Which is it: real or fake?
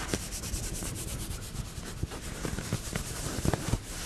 fake